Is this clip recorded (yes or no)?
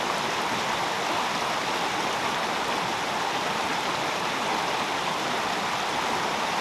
yes